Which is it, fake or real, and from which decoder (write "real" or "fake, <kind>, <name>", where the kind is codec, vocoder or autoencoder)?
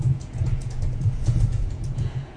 fake, vocoder, Vocos